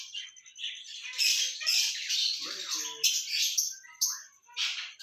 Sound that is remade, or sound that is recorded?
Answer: remade